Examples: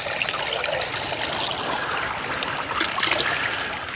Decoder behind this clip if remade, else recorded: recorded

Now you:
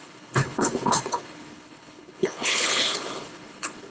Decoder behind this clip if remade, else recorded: remade, codec, HILCodec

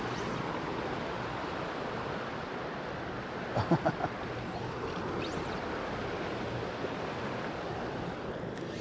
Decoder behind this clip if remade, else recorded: recorded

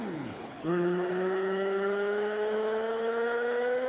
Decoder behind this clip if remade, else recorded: remade, codec, HILCodec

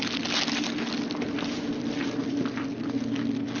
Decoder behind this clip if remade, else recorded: recorded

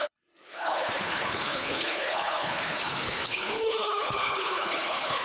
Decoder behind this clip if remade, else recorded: remade, codec, HILCodec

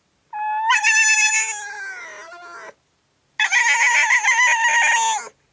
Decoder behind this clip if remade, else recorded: recorded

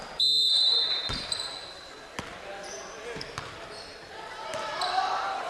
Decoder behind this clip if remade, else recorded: recorded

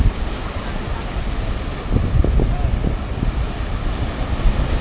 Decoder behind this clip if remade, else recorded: recorded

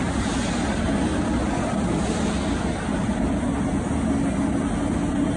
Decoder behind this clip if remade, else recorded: recorded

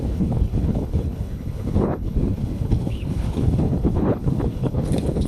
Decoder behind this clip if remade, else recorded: remade, codec, HILCodec